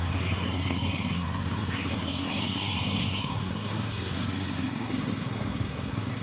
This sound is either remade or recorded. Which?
remade